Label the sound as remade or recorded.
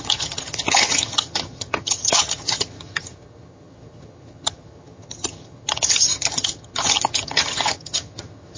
remade